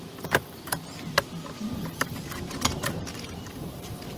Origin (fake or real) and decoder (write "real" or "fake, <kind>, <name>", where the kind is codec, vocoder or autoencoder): fake, vocoder, BigVGAN v2